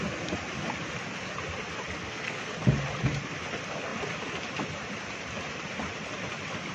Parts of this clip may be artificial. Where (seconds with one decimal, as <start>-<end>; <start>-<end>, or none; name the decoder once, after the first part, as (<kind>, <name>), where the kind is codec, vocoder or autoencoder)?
2.0-2.5 (codec, SNAC)